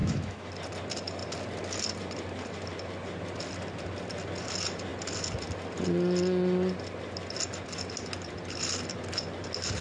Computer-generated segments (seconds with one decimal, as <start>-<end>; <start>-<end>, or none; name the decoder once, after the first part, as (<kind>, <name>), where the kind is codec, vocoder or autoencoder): 0.0-0.5 (autoencoder, DAC-VAE)